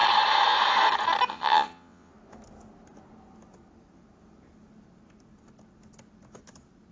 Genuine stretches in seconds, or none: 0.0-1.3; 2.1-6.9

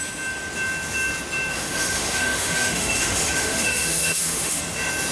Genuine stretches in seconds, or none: 0.0-1.5; 4.6-5.1

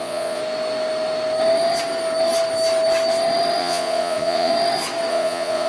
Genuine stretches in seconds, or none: 0.4-3.6; 4.5-5.1

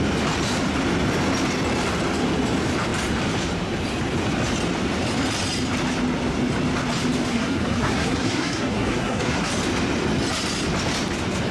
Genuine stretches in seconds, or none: 0.0-7.3; 9.5-11.5